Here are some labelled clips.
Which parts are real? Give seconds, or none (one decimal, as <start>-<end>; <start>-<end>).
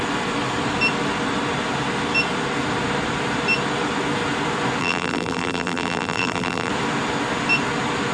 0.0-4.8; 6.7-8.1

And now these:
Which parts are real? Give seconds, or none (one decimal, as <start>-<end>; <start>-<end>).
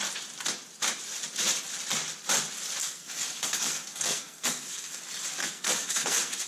0.0-2.8; 5.0-5.4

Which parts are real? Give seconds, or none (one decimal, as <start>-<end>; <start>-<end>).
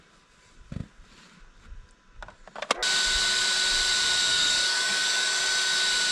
0.0-4.3; 5.4-6.1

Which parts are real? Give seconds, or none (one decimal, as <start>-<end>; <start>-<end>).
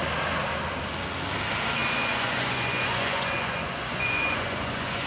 0.0-1.8